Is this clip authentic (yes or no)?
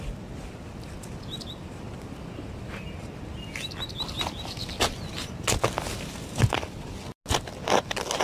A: yes